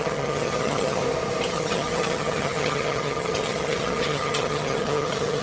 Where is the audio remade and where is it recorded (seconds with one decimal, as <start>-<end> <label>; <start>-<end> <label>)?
0.0-1.0 remade; 1.0-1.5 recorded; 1.5-5.4 remade